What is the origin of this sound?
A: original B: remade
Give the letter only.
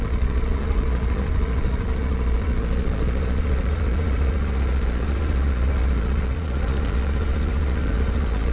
B